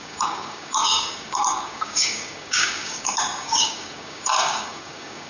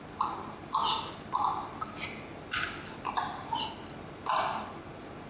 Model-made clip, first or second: first